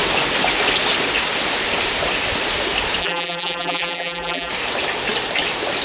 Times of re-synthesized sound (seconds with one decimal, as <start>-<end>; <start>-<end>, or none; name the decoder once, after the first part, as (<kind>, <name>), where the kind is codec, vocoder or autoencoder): 3.0-4.5 (vocoder, BigVGAN v2)